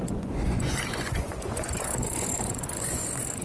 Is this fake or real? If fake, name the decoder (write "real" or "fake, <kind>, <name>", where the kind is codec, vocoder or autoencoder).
fake, vocoder, Vocos